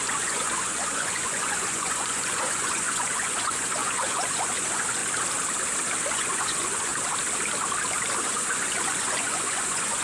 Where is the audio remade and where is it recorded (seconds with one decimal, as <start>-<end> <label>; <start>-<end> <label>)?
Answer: 0.0-5.0 remade; 5.0-6.1 recorded; 6.1-6.9 remade; 6.9-8.2 recorded; 8.2-10.0 remade